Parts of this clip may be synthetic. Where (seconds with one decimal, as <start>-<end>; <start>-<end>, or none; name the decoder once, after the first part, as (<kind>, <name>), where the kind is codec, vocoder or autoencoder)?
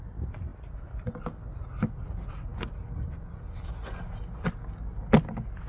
none